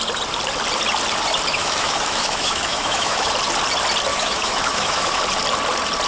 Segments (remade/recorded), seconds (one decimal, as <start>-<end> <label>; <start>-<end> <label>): 0.0-1.6 recorded; 1.6-3.3 remade; 3.3-4.1 recorded; 4.1-5.2 remade; 5.2-6.1 recorded